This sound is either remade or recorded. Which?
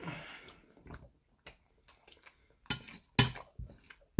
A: recorded